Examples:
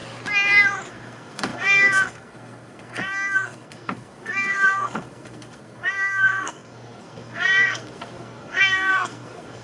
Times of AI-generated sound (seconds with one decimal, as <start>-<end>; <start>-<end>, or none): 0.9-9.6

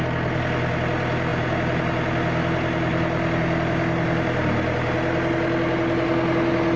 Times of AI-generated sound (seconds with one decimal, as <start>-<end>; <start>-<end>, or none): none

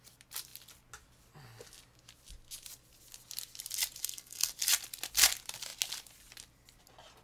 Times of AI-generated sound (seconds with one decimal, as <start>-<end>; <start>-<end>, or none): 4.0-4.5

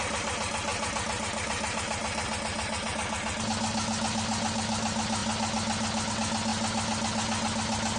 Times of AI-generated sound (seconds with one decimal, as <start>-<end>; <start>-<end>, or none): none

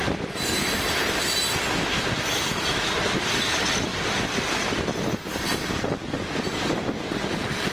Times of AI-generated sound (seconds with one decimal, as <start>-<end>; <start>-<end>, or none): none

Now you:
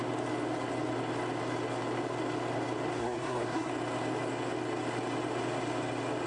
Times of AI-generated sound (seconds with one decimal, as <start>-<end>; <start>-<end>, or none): 3.0-3.7